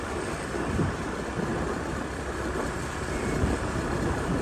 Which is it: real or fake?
real